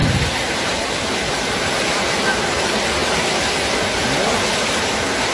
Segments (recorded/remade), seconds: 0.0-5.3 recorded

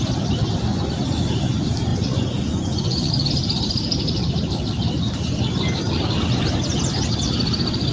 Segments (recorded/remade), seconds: 0.0-0.7 recorded; 0.7-1.3 remade; 1.3-1.9 recorded; 1.9-3.1 remade; 3.1-7.9 recorded

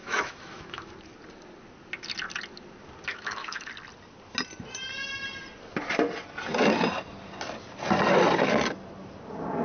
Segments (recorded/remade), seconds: 0.0-0.9 remade; 0.9-3.1 recorded; 3.1-3.7 remade; 3.7-9.6 recorded

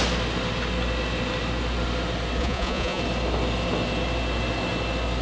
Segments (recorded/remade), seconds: 0.0-2.4 recorded; 2.4-3.0 remade; 3.0-5.2 recorded

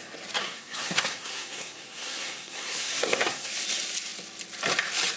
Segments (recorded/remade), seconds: 0.0-0.4 recorded; 0.4-3.5 remade; 3.5-5.2 recorded

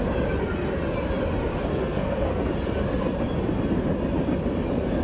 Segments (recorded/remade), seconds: 0.0-1.7 recorded; 1.7-2.5 remade; 2.5-5.0 recorded

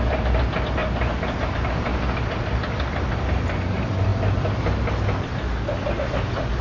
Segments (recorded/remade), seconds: 0.0-6.6 recorded

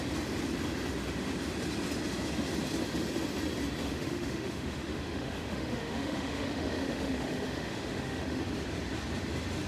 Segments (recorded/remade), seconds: 0.0-3.8 recorded; 3.8-8.4 remade; 8.4-9.7 recorded